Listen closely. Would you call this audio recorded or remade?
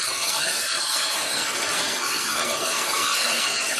remade